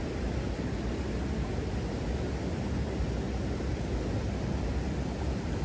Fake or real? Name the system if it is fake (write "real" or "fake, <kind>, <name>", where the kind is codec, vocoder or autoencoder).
real